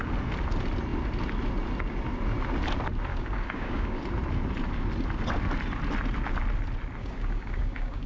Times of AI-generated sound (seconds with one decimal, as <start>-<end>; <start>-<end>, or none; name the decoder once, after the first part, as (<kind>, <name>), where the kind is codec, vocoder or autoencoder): 3.1-4.0 (codec, DAC); 7.0-8.1